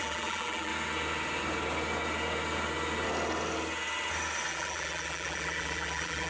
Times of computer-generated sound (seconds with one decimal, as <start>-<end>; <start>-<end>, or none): 0.0-0.7; 4.5-6.3